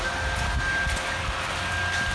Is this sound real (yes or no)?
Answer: yes